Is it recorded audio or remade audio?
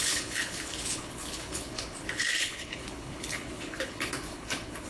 remade